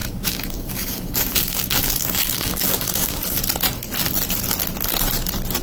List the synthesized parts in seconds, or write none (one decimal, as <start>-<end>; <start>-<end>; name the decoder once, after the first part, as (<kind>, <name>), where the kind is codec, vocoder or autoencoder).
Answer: 0.0-3.4 (codec, DAC)